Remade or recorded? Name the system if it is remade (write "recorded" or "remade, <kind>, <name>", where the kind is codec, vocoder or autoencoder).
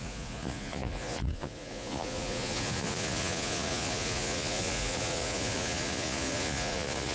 remade, vocoder, Vocos